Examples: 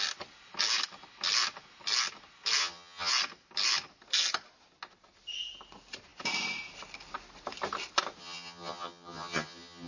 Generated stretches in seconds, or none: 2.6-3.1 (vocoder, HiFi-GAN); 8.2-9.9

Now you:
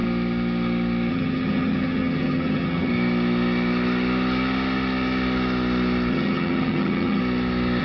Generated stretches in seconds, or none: 1.1-2.9 (vocoder, HiFi-GAN); 6.1-7.2

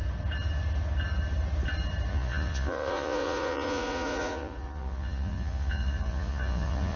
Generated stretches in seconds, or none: 2.1-7.0 (vocoder, Vocos)

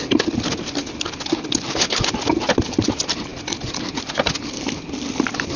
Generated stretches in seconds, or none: none

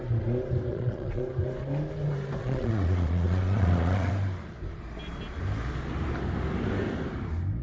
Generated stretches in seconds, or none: 0.7-1.2 (vocoder, Vocos); 2.4-4.1

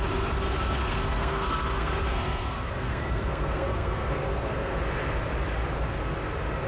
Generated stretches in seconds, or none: 0.8-4.8 (codec, SNAC)

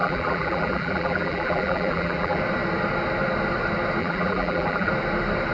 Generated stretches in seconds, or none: 0.0-2.4 (vocoder, BigVGAN v2); 4.0-4.9